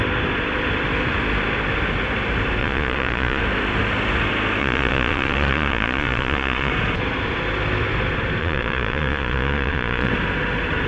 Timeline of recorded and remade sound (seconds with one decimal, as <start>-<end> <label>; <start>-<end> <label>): 0.0-2.6 recorded; 2.6-3.4 remade; 3.4-4.6 recorded; 4.6-6.7 remade; 6.7-8.4 recorded; 8.4-10.1 remade; 10.1-10.9 recorded